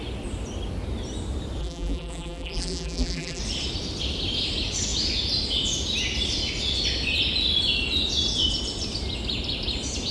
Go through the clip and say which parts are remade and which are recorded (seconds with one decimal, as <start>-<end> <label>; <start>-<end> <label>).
0.0-1.6 recorded; 1.6-3.4 remade; 3.4-10.1 recorded

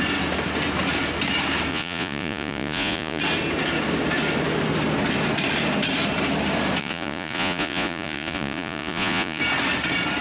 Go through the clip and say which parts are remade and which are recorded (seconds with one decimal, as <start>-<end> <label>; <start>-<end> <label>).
0.0-1.7 recorded; 1.7-3.2 remade; 3.2-6.8 recorded; 6.8-9.4 remade; 9.4-10.2 recorded